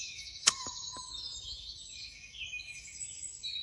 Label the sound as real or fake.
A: fake